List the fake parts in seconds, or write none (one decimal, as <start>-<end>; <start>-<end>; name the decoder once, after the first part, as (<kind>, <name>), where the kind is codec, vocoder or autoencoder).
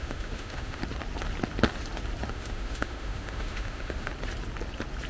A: 0.0-0.8 (autoencoder, DAC-VAE); 2.3-4.1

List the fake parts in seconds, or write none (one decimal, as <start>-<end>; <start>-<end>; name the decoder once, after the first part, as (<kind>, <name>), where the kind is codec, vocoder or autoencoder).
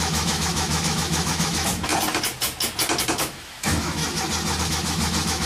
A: 0.0-1.9 (autoencoder, DAC-VAE); 3.1-4.0; 4.6-5.5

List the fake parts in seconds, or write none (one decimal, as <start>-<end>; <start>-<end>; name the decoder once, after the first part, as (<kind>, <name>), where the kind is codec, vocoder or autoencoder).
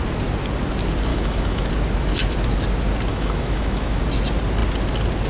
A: 1.1-1.7 (autoencoder, DAC-VAE); 3.1-4.0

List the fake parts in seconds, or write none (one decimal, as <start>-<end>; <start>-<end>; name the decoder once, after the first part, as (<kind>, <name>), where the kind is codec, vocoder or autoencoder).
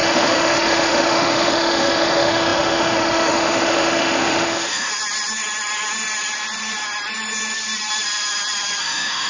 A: 0.0-4.9 (autoencoder, DAC-VAE); 8.8-9.3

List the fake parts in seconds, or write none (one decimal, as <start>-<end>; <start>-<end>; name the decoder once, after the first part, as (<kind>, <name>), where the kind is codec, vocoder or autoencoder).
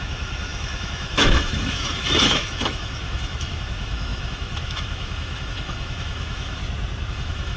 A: 0.0-6.6 (autoencoder, DAC-VAE); 7.1-7.6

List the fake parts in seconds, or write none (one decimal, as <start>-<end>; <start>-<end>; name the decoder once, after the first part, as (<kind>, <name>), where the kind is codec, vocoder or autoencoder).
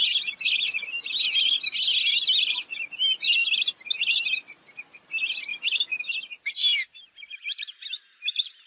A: 5.5-6.1 (autoencoder, DAC-VAE)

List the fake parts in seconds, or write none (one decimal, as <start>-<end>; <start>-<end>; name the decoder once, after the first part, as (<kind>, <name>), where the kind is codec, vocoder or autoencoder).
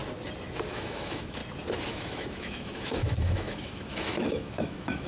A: 0.7-1.4 (autoencoder, DAC-VAE); 1.9-5.1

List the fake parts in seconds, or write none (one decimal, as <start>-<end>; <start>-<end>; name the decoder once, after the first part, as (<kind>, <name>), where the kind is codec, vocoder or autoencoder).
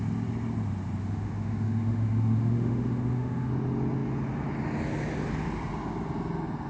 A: 1.0-3.5 (autoencoder, DAC-VAE)